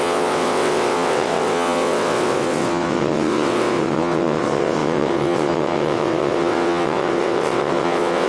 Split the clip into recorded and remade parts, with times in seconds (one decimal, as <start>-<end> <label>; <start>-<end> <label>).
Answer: 0.0-8.3 remade